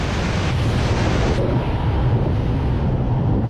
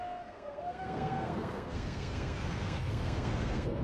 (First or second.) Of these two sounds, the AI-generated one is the second